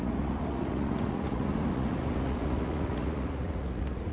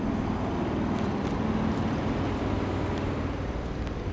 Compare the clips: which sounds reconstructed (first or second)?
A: first